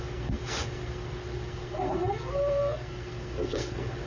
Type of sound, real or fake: fake